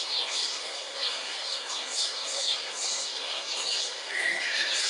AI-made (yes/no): yes